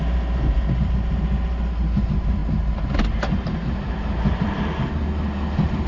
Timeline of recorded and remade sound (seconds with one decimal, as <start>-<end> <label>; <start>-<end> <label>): 0.0-5.9 recorded